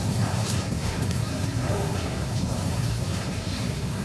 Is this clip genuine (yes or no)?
no